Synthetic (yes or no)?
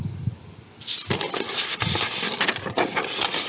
no